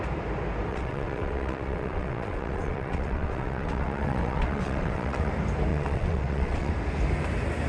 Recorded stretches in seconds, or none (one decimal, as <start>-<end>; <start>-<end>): 0.0-0.7; 5.3-5.7; 6.7-7.7